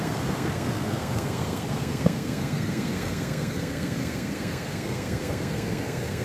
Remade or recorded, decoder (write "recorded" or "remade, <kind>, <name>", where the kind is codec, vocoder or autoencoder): remade, codec, SNAC